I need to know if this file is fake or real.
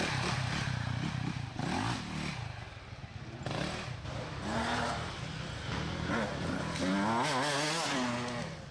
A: real